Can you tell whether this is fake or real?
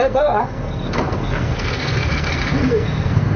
fake